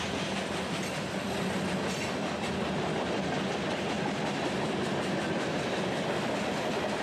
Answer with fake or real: real